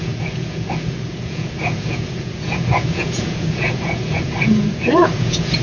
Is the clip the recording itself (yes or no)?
no